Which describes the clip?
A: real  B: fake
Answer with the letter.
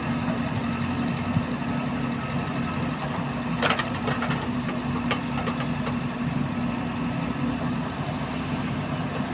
A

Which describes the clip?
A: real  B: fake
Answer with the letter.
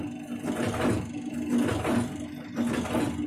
A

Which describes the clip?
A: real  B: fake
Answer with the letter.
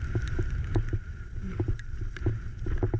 A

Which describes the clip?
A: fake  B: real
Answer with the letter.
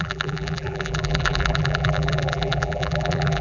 A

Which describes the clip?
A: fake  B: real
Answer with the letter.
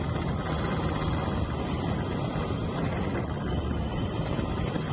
B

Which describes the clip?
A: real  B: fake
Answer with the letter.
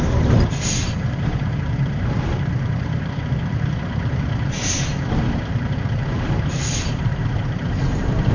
B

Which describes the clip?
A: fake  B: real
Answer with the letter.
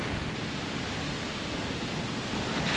B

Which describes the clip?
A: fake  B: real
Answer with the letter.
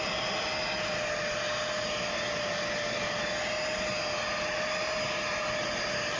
B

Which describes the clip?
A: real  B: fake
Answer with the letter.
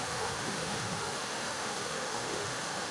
B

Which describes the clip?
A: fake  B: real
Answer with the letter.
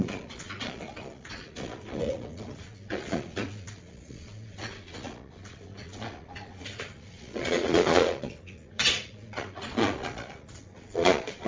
A